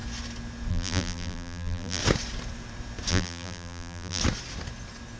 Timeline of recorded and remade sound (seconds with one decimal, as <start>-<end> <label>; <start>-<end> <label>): 0.0-0.7 recorded; 0.7-2.0 remade; 2.0-3.1 recorded; 3.1-4.2 remade; 4.2-5.2 recorded